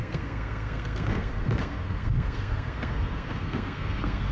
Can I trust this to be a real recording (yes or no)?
no